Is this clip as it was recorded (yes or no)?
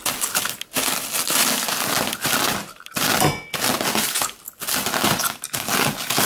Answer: yes